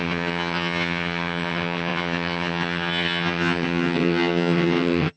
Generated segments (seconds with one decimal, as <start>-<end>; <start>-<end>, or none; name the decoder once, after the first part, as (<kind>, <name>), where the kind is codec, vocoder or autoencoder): 0.0-5.2 (vocoder, HiFi-GAN)